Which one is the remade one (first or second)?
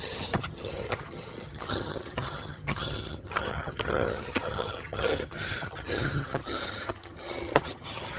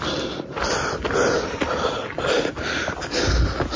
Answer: first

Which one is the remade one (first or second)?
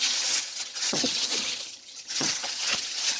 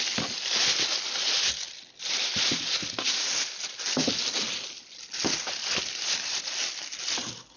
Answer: first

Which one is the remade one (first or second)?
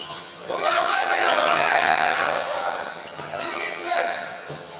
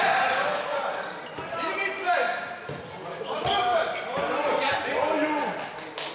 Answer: first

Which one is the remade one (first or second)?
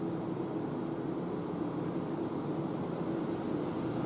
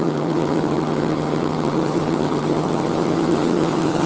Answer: second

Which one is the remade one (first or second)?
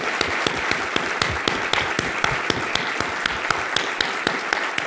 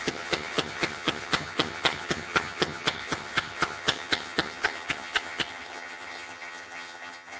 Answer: second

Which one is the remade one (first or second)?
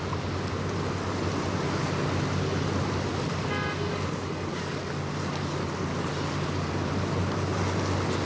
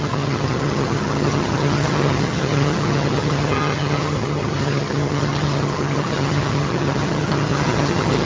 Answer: second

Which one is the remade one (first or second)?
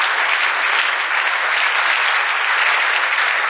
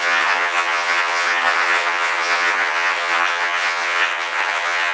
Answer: second